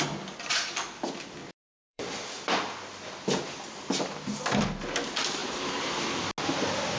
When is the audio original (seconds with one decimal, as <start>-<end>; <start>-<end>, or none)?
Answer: 0.0-1.4; 2.9-5.4; 5.9-7.0